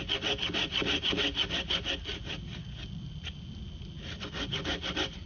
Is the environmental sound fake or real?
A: real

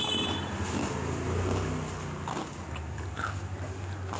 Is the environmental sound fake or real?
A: real